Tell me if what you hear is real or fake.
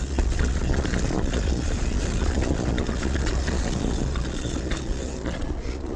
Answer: fake